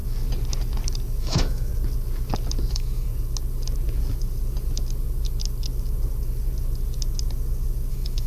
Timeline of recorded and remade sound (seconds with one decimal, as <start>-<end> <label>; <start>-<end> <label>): 0.0-1.2 recorded; 1.2-1.7 remade; 1.7-2.7 recorded; 2.7-3.1 remade; 3.1-7.9 recorded; 7.9-8.3 remade